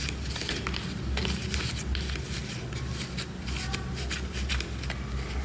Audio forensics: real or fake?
real